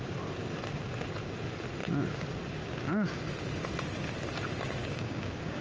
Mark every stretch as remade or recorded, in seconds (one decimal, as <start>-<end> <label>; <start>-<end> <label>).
0.0-4.8 recorded; 4.8-5.6 remade